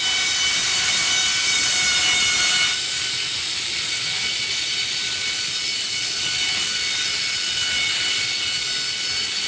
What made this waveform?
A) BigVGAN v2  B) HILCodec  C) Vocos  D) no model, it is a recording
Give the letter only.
D